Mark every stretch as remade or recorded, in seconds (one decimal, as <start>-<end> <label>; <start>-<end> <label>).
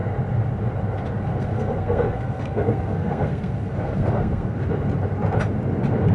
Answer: 0.0-1.3 recorded; 1.3-4.6 remade; 4.6-6.1 recorded